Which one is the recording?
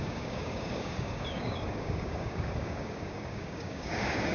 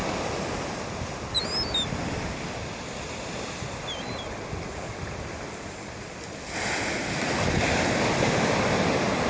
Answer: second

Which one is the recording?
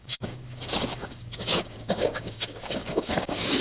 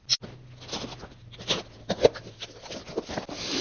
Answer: second